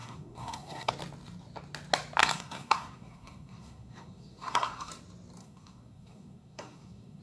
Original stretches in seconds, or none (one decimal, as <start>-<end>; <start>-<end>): 0.9-2.2; 4.9-5.4